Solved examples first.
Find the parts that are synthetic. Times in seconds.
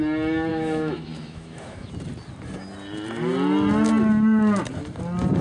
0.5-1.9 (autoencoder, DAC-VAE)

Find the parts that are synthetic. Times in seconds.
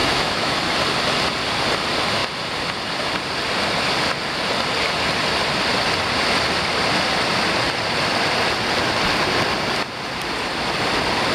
0.0-0.6 (autoencoder, DAC-VAE)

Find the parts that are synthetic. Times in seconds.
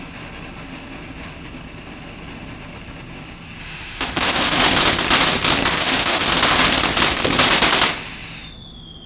3.6-4.6 (autoencoder, DAC-VAE); 5.7-6.3